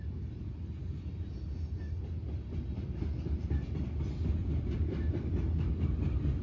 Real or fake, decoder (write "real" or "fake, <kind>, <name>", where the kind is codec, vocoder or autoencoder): real